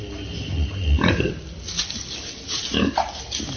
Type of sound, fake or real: real